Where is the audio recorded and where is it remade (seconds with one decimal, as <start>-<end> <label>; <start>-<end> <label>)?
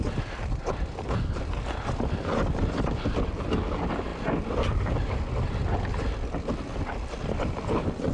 0.0-8.1 recorded